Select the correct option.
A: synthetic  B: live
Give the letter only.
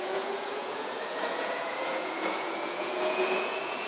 A